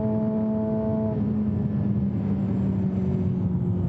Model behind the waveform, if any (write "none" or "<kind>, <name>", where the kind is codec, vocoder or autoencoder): none